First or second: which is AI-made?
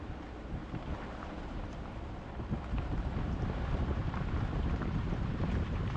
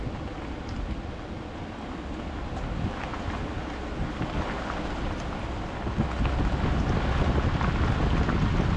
first